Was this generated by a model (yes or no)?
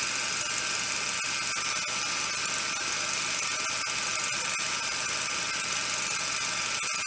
no